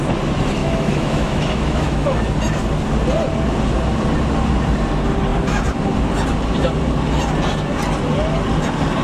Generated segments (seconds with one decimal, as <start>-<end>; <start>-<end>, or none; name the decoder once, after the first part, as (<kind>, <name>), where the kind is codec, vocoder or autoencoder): 0.6-2.2 (autoencoder, DAC-VAE)